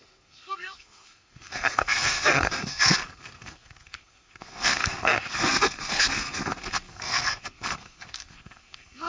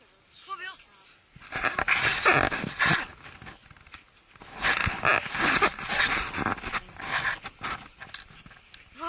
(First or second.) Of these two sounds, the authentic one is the second